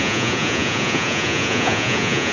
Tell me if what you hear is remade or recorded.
remade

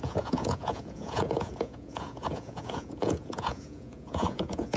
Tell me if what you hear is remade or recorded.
remade